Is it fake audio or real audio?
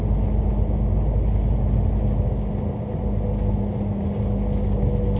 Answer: real